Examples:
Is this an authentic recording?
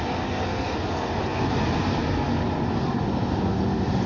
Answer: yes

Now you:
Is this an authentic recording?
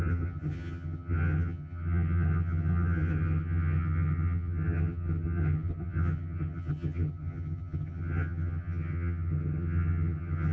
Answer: no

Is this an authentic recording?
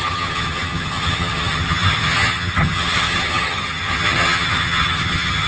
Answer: no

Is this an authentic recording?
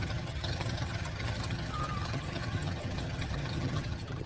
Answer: no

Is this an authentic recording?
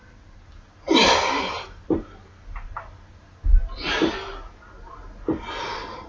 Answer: yes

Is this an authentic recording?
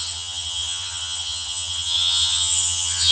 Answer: no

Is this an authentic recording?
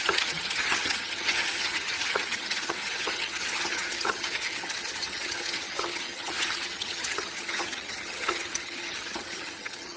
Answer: no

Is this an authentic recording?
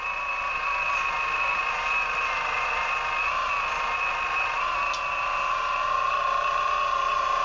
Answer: yes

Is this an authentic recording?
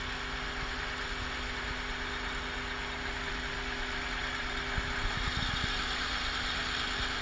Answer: yes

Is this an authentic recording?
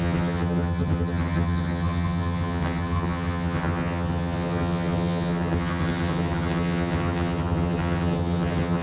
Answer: no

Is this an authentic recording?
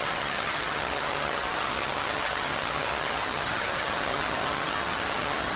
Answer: no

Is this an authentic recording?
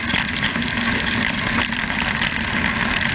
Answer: yes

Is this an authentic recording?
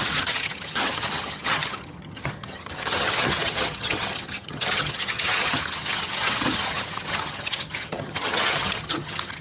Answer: no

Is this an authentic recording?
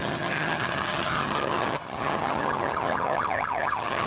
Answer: no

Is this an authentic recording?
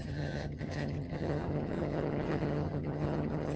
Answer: no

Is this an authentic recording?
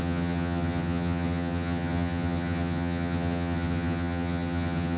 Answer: no